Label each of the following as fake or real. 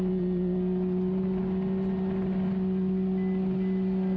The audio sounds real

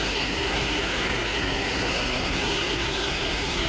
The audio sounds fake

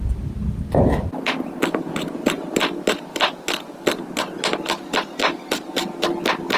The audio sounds real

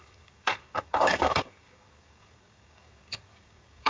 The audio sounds fake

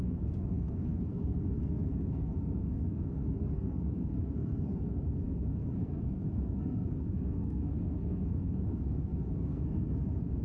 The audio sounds fake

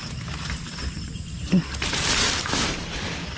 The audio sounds real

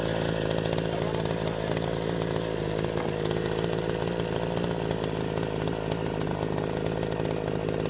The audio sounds real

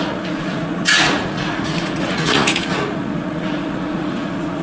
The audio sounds fake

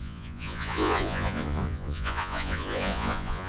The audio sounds fake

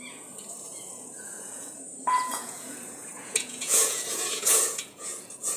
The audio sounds fake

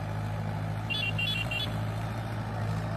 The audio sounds fake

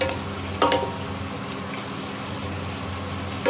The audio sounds real